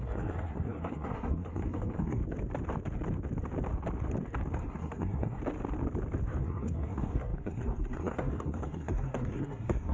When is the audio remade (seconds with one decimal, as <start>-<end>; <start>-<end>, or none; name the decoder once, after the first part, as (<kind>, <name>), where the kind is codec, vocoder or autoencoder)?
0.0-2.2 (codec, SNAC); 4.6-5.4; 6.4-9.9